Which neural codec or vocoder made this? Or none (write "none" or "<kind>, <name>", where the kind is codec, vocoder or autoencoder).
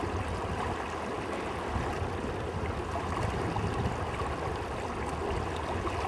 none